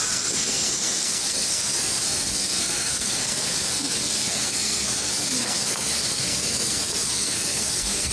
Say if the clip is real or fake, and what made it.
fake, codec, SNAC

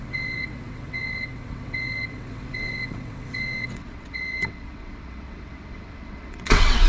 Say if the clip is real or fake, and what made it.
fake, vocoder, WaveNeXt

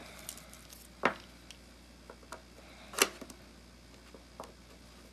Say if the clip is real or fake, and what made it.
real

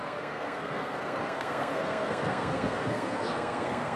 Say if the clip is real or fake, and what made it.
fake, codec, SNAC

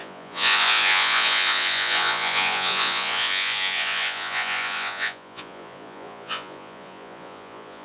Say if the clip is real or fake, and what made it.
fake, vocoder, Vocos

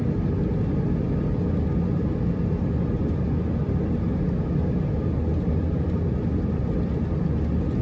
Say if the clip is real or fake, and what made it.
real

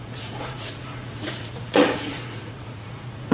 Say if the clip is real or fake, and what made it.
fake, vocoder, Vocos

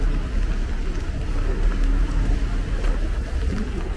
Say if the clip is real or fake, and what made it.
real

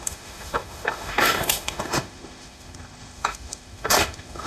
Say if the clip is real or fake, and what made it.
fake, autoencoder, DAC-VAE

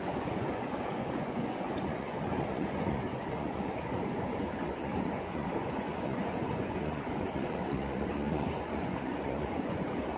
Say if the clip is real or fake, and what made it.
fake, vocoder, Vocos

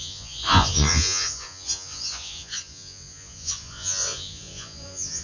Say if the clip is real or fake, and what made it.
fake, vocoder, Vocos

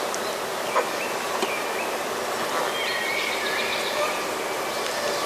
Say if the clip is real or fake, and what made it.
real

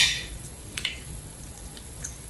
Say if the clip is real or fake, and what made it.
fake, vocoder, Vocos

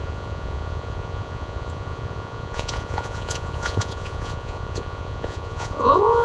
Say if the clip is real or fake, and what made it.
fake, vocoder, Vocos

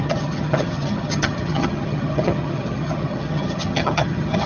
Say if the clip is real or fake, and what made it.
fake, vocoder, HiFi-GAN